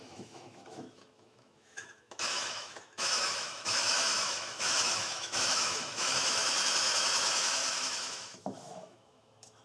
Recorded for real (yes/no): no